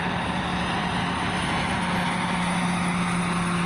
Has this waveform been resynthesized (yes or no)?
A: no